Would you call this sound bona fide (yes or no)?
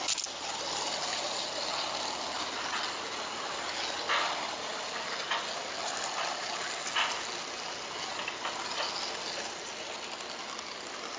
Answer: yes